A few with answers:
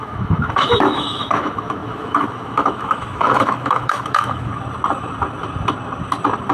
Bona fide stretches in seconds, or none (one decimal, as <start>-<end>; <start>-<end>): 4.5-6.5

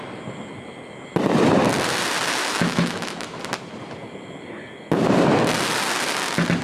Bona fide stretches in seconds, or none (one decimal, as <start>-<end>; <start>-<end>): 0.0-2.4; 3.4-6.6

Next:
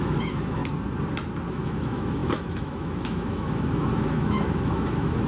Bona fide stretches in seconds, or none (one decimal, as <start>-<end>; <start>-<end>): 0.6-1.5

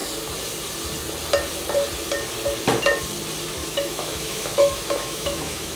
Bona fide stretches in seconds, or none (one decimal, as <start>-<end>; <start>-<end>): 0.0-3.6

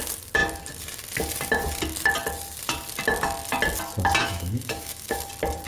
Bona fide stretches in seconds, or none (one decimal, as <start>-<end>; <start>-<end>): 0.0-4.2; 5.3-5.7